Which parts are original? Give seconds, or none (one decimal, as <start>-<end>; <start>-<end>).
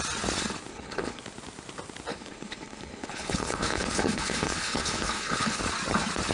0.0-0.7; 1.2-2.1; 5.6-6.3